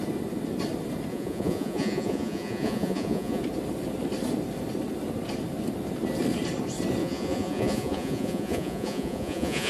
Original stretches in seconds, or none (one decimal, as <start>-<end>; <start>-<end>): 0.0-1.1; 3.4-7.0

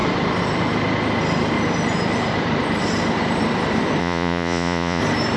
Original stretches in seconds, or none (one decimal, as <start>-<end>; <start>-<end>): 0.0-4.0; 5.0-5.4

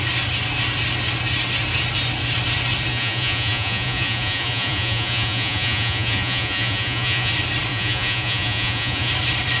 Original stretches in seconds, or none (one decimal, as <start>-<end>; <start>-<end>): 0.0-2.9; 7.3-7.7; 9.1-9.6

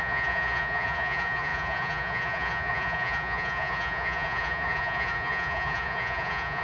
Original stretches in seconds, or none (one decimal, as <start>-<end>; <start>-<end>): none

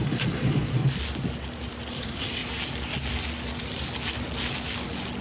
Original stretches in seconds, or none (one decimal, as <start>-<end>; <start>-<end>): 0.8-1.9; 2.4-5.2

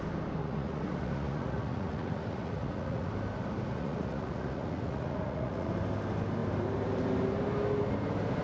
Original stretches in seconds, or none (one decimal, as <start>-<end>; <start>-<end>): 0.0-0.4; 3.1-3.7; 5.7-8.4

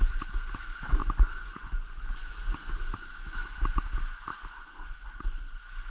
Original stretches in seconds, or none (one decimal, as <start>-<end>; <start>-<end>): 0.0-1.0; 2.7-4.3; 5.1-5.9